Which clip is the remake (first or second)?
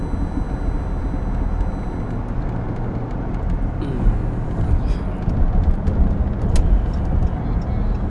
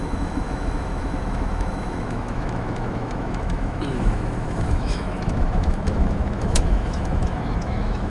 second